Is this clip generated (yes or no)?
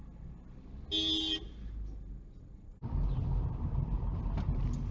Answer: no